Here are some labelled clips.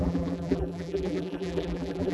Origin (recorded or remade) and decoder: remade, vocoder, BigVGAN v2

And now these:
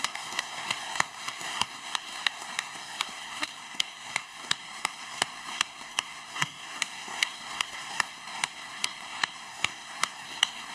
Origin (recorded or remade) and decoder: remade, codec, SNAC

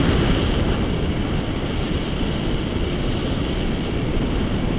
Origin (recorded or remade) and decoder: recorded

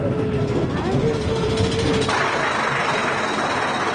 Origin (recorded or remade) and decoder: recorded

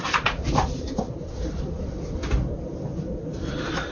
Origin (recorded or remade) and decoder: recorded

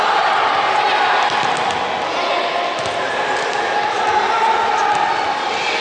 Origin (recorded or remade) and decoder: recorded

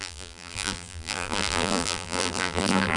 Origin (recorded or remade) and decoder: remade, vocoder, BigVGAN v2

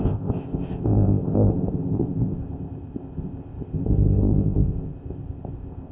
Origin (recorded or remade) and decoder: remade, codec, ZipCodec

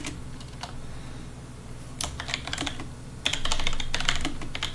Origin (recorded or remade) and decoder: recorded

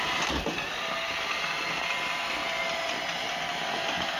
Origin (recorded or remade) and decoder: recorded